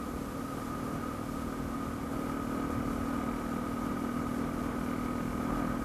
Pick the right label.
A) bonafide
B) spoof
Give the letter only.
A